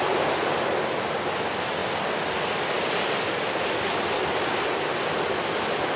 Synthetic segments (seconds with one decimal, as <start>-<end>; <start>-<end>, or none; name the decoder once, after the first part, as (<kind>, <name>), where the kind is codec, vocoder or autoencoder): none